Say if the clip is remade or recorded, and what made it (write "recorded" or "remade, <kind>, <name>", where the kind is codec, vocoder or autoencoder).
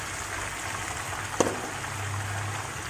recorded